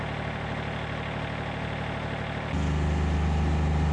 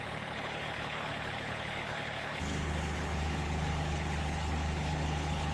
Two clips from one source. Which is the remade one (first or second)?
second